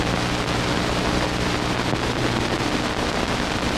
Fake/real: real